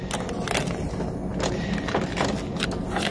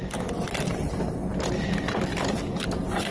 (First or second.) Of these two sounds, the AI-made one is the second